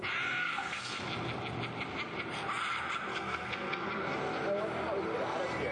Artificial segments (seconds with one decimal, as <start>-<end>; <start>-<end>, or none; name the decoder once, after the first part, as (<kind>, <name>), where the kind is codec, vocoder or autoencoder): 0.4-1.0 (codec, SNAC); 3.1-3.9